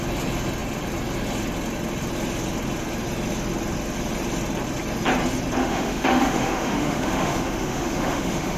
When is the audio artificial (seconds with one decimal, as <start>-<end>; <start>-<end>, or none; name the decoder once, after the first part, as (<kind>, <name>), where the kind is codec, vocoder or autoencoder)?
5.6-8.6 (autoencoder, DAC-VAE)